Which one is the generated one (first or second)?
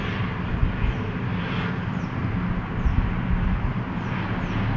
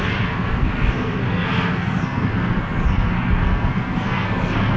second